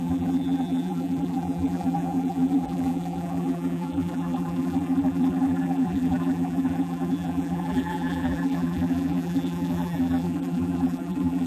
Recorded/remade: remade